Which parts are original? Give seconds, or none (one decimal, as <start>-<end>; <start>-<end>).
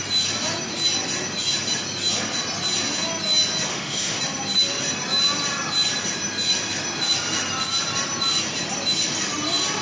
0.0-3.7; 4.2-9.8